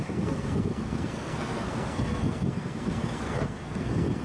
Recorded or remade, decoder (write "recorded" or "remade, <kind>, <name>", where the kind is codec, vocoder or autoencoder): remade, codec, SNAC